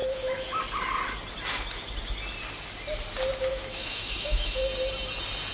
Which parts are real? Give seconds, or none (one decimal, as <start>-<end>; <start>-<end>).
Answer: 0.6-3.5; 4.6-5.5